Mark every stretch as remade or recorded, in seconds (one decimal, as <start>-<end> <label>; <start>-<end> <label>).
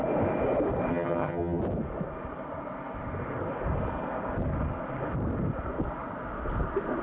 0.0-0.9 recorded; 0.9-1.6 remade; 1.6-7.0 recorded